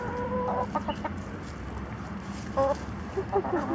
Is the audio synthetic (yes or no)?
no